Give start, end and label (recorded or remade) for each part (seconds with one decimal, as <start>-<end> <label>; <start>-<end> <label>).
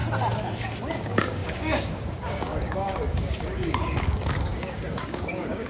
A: 0.0-0.9 recorded; 0.9-5.7 remade